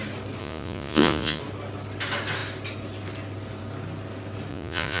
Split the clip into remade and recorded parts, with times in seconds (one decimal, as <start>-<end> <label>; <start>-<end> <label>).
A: 0.0-0.4 recorded; 0.4-1.4 remade; 1.4-4.5 recorded; 4.5-5.0 remade